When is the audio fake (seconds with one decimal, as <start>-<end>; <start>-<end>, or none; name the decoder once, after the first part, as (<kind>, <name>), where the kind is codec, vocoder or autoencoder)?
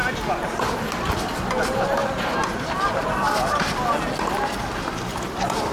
none